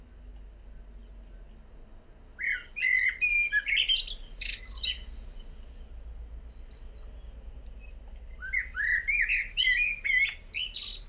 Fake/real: real